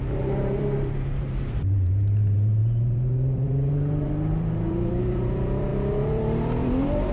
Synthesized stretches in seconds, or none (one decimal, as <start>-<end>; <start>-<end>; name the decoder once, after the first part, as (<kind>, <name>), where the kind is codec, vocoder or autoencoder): 0.0-7.1 (vocoder, BigVGAN v2)